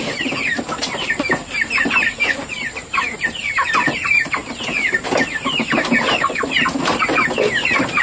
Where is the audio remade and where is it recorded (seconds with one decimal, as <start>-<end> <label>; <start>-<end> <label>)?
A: 0.0-4.4 remade; 4.4-8.0 recorded